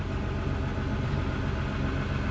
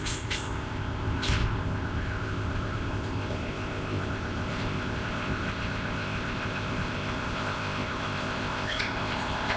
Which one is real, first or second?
first